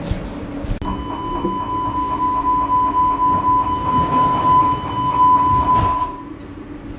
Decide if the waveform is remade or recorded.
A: recorded